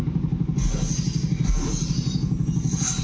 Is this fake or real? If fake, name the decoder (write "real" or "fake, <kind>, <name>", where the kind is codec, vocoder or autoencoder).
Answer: real